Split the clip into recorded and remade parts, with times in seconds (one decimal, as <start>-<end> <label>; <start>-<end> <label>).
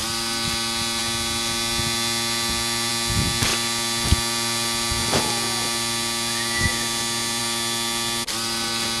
0.0-9.0 recorded